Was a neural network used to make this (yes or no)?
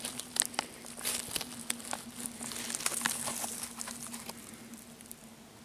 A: no